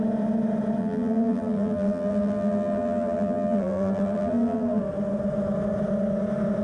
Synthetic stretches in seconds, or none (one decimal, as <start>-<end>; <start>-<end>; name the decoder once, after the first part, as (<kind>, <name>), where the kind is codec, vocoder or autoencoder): 0.8-4.8 (vocoder, BigVGAN v2)